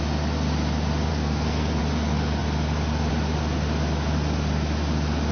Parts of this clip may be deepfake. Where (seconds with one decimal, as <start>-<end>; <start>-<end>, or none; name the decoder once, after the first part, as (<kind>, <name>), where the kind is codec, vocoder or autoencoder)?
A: 1.1-1.8 (codec, SNAC)